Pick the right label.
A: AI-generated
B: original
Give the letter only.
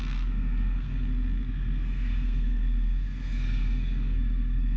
A